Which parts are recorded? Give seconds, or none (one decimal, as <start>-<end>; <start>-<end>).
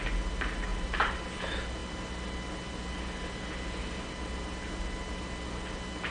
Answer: 0.0-0.7; 1.2-6.1